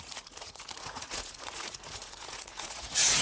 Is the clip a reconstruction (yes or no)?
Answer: yes